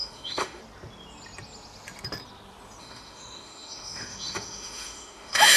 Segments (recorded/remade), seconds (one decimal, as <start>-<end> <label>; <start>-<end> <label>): 0.0-0.6 remade; 0.6-2.8 recorded; 2.8-5.6 remade